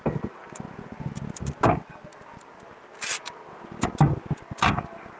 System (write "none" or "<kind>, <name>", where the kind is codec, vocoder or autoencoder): none